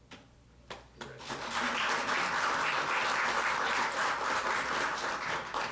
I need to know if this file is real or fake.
real